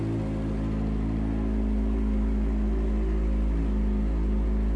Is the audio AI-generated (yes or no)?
no